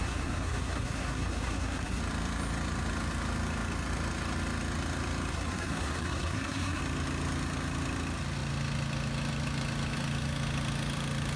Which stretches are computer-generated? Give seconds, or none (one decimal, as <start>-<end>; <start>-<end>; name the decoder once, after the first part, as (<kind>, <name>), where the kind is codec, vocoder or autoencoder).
0.0-2.0 (codec, SNAC); 5.3-6.8